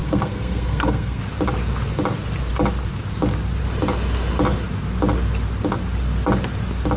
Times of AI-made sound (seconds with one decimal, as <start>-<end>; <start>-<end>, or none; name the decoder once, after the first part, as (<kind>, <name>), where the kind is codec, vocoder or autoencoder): 0.0-1.2 (codec, SNAC)